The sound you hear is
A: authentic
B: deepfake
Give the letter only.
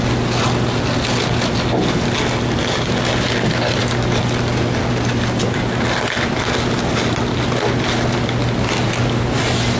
A